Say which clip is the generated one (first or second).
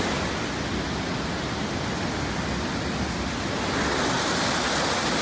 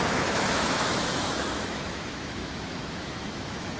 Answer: second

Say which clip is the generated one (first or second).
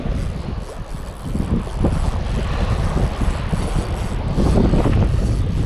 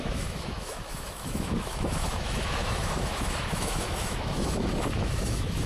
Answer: second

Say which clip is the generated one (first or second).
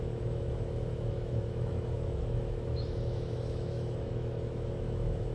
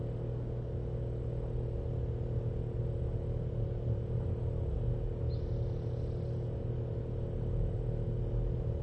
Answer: first